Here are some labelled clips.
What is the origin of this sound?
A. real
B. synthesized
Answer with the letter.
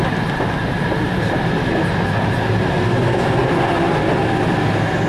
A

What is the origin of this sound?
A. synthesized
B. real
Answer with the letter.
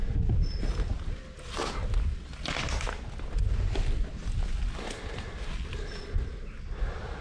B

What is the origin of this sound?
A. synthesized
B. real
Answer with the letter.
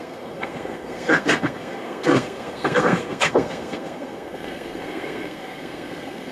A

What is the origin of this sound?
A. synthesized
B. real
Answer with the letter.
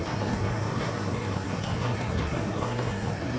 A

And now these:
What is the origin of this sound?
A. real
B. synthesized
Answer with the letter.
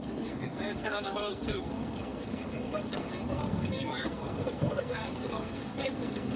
B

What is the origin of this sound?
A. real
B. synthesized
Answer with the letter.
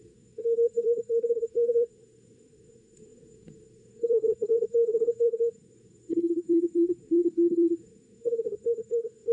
B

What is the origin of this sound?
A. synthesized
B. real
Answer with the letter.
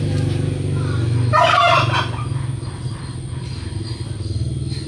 B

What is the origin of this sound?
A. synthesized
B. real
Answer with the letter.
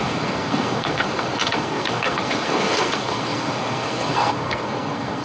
A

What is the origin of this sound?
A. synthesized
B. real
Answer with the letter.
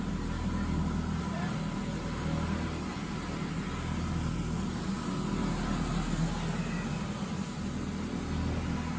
B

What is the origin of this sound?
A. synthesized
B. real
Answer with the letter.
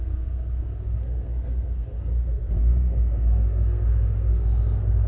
A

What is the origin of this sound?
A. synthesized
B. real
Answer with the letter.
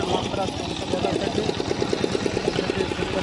B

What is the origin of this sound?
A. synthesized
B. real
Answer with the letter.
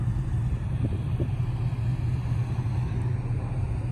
B